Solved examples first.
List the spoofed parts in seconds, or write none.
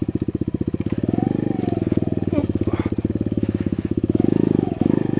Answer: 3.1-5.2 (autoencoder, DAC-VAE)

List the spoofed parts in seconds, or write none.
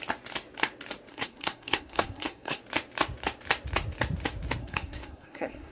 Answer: 1.1-2.6 (codec, SNAC); 4.6-5.7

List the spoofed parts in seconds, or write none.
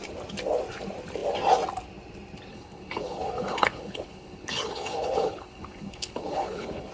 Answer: 2.5-6.9 (codec, HILCodec)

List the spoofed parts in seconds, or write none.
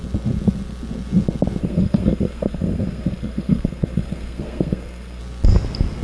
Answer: 1.6-5.2 (codec, SNAC)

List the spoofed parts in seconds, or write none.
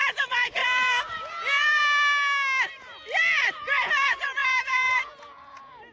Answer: 0.0-1.8 (vocoder, Vocos); 2.8-5.9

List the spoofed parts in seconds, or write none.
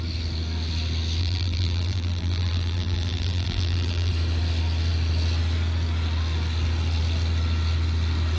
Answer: 1.2-4.1 (vocoder, BigVGAN v2)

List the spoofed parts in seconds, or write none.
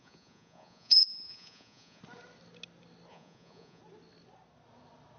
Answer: 0.0-2.0 (vocoder, Vocos); 3.1-3.8